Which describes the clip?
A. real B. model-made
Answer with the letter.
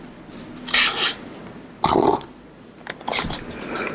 A